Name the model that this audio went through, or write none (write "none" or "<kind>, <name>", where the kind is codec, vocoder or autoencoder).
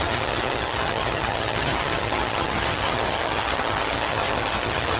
vocoder, HiFi-GAN